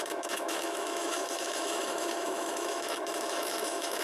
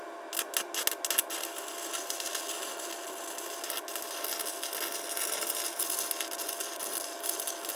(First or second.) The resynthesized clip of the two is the first